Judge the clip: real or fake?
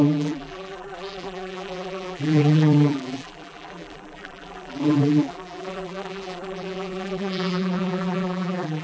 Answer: fake